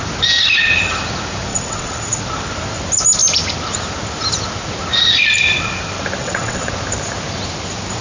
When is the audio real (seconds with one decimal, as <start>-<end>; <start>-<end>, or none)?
0.0-1.5; 2.2-6.2; 6.7-8.0